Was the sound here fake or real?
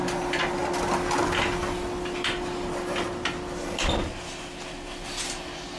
real